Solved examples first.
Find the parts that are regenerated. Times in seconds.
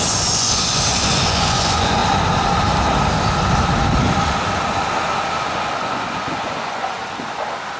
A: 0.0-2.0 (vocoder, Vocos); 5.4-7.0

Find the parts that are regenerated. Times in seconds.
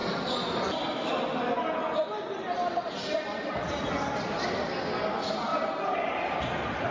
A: none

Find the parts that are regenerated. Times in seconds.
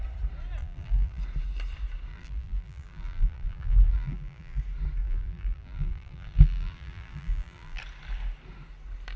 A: 0.6-1.2 (vocoder, BigVGAN v2); 2.1-4.6; 5.0-7.8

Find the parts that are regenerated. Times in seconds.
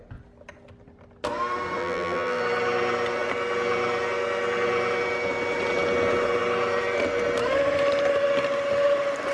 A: 1.8-2.4 (vocoder, BigVGAN v2)